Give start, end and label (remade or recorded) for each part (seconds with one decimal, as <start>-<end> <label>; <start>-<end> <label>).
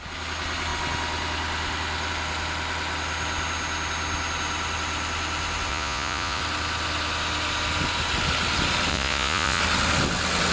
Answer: 0.0-5.7 recorded; 5.7-6.4 remade; 6.4-8.9 recorded; 8.9-9.6 remade; 9.6-10.5 recorded